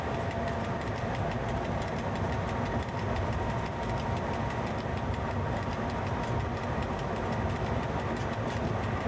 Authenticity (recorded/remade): recorded